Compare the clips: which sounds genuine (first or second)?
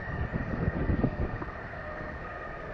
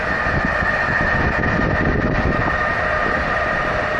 second